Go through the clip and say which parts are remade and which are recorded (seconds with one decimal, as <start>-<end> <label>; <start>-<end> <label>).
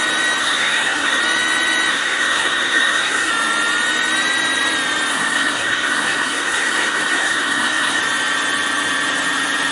0.0-0.4 recorded; 0.4-1.2 remade; 1.2-1.9 recorded; 1.9-3.3 remade; 3.3-5.1 recorded; 5.1-8.0 remade; 8.0-9.7 recorded